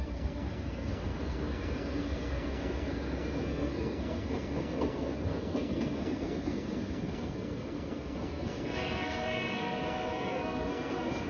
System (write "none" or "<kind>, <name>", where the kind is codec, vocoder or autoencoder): codec, SNAC